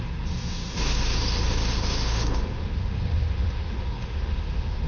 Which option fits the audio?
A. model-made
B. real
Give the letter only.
A